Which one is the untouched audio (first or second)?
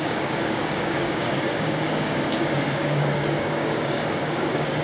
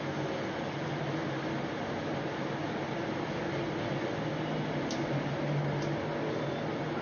second